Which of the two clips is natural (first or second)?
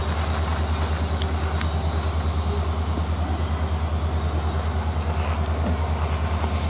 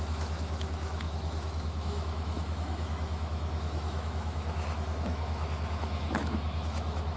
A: first